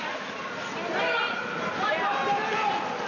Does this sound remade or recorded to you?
recorded